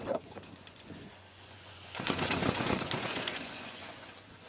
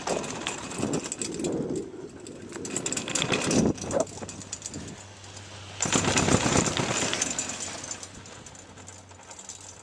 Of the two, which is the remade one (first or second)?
first